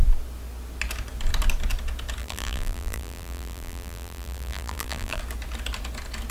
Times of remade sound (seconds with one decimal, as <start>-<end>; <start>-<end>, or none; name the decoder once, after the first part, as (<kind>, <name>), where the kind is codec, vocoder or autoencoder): 2.2-5.2 (vocoder, BigVGAN v2)